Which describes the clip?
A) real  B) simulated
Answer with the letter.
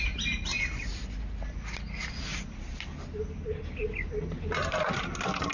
A